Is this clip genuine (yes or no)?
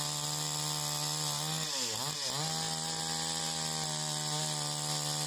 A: yes